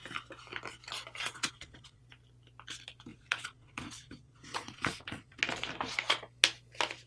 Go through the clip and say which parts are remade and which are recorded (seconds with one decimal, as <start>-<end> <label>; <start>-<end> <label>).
0.0-1.2 recorded; 1.2-2.0 remade; 2.0-3.1 recorded; 3.1-5.4 remade; 5.4-7.1 recorded